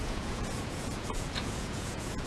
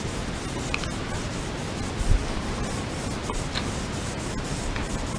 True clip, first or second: second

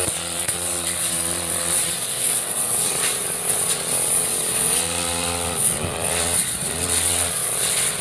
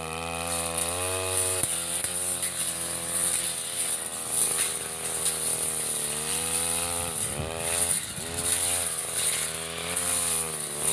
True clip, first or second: second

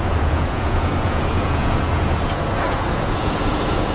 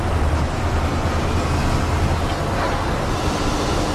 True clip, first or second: second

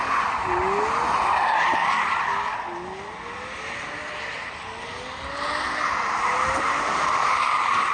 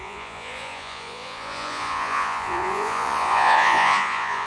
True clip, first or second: first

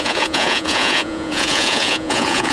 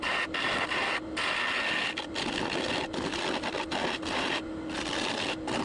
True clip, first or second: second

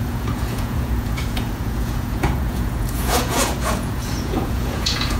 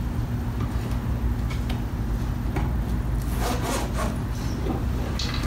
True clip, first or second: second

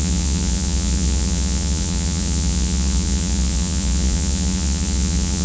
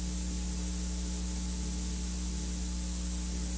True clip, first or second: second